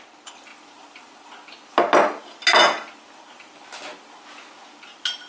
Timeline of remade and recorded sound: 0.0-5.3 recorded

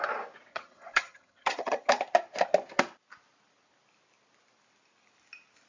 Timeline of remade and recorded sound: 0.0-0.5 recorded; 0.5-1.9 remade; 1.9-5.7 recorded